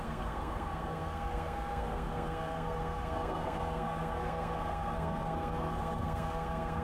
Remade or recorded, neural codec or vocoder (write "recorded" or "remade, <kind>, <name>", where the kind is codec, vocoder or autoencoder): remade, codec, SNAC